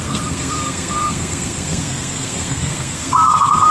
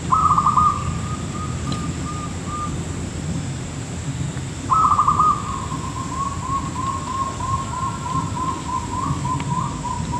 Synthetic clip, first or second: first